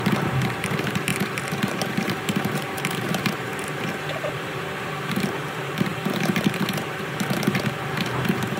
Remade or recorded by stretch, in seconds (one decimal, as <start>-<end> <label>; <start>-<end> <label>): 0.0-8.6 remade

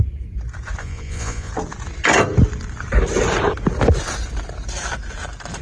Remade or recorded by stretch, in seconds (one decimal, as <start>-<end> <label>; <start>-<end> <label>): 0.0-0.8 recorded; 0.8-1.5 remade; 1.5-5.6 recorded

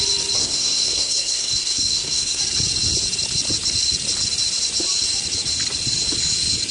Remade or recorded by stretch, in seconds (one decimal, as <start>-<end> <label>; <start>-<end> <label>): 0.0-0.4 recorded; 0.4-2.4 remade; 2.4-6.7 recorded

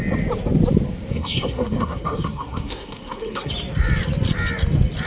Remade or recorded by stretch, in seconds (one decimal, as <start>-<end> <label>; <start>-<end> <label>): 0.0-1.1 recorded; 1.1-3.5 remade; 3.5-5.1 recorded